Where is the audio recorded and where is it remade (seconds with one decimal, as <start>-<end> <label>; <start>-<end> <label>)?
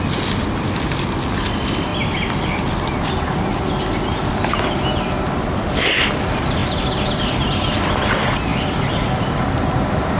0.0-10.2 recorded